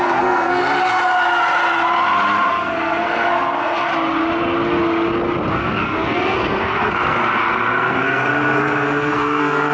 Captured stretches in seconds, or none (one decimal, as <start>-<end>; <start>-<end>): 0.6-2.5; 3.9-5.5